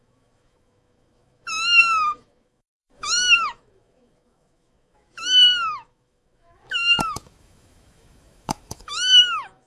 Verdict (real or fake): fake